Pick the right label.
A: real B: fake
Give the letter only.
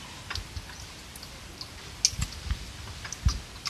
A